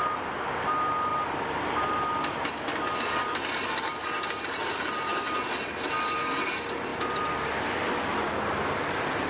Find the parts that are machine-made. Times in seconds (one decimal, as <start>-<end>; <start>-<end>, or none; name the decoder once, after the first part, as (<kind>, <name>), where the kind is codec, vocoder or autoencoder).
none